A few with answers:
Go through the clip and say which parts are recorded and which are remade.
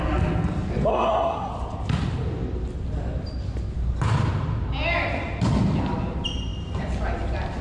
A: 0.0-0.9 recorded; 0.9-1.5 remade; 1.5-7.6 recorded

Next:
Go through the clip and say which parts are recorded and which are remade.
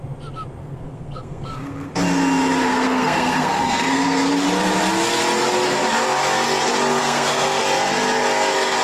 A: 0.0-0.6 recorded; 0.6-1.9 remade; 1.9-2.7 recorded; 2.7-4.3 remade; 4.3-7.0 recorded; 7.0-7.6 remade; 7.6-8.8 recorded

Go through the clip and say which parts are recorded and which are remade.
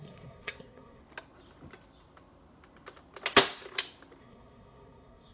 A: 0.0-1.0 remade; 1.0-4.2 recorded; 4.2-5.3 remade